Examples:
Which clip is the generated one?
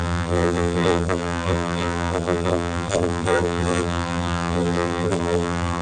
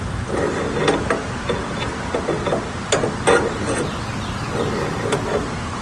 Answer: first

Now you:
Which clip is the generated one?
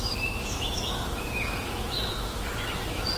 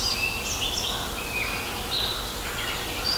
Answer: first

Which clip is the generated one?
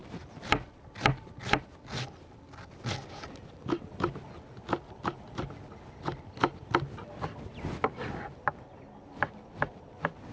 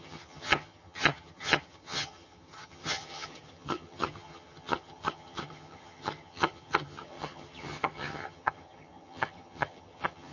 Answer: second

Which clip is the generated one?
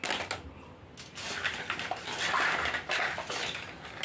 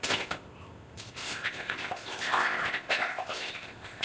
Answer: second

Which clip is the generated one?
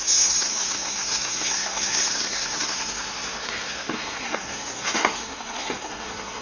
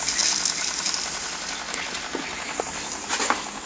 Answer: first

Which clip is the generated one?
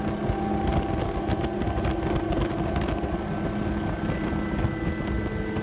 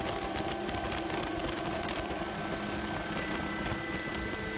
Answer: second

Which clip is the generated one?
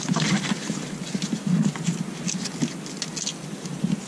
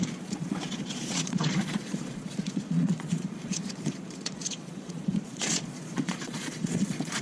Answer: second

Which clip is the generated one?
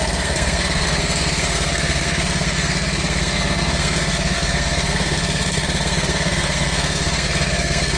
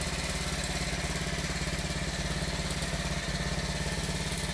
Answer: first